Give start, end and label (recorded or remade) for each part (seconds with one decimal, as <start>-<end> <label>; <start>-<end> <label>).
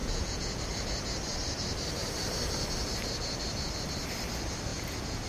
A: 0.0-0.6 remade; 0.6-4.7 recorded; 4.7-5.3 remade